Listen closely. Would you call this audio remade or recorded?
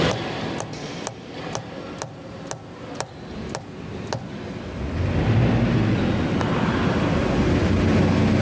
recorded